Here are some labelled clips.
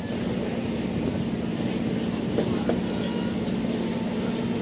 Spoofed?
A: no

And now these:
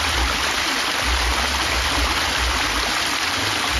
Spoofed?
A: no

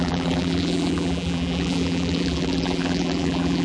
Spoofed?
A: yes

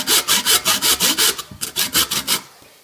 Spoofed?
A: no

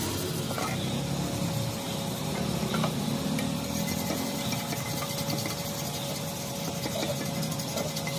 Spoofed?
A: no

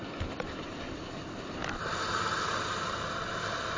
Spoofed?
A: yes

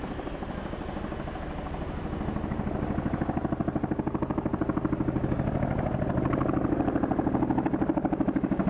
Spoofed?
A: no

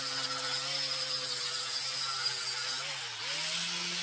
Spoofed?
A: no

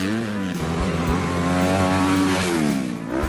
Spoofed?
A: no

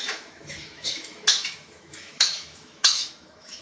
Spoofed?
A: yes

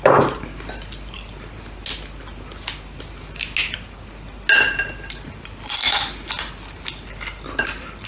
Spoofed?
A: no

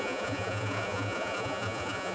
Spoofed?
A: yes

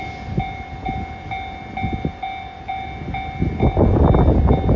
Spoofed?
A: no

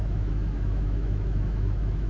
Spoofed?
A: yes